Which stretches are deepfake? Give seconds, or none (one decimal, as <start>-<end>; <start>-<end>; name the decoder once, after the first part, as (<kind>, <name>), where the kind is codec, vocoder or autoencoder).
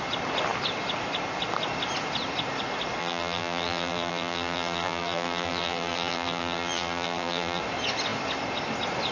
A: 3.0-7.6 (vocoder, BigVGAN v2)